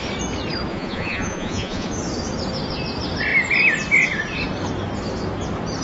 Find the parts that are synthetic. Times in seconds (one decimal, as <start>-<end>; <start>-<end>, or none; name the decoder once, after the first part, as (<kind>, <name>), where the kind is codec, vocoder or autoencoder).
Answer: 0.7-1.9 (vocoder, Vocos)